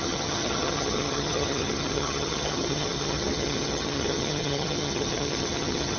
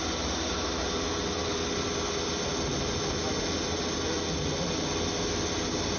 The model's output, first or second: first